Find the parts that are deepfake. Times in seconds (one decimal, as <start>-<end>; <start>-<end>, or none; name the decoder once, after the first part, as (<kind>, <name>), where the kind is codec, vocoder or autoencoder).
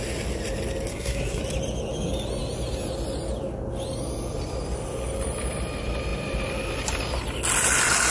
0.9-1.4 (codec, SNAC)